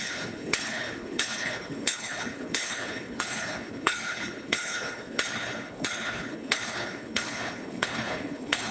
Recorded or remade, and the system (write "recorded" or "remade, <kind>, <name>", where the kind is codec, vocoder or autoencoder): remade, codec, HILCodec